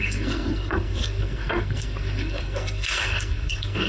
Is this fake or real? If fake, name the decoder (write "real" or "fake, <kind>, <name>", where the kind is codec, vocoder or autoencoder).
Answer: fake, codec, SNAC